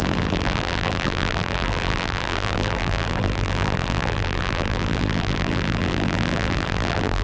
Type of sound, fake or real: fake